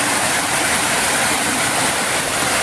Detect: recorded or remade recorded